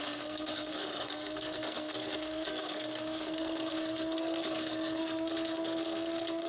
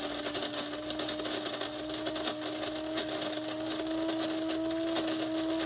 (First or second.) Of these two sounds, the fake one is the first